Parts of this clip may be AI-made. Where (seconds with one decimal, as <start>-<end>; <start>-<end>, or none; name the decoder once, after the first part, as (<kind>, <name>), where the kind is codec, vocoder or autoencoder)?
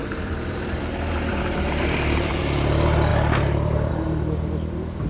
0.0-0.8 (vocoder, BigVGAN v2); 1.3-2.4; 3.1-3.9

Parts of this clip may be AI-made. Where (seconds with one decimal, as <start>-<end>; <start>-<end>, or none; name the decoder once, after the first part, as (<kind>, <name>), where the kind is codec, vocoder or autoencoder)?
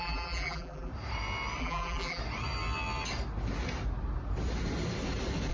0.0-0.9 (vocoder, BigVGAN v2); 1.6-2.2